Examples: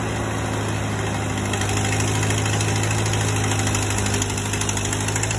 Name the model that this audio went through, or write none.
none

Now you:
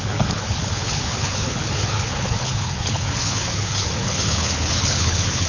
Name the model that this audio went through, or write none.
codec, HILCodec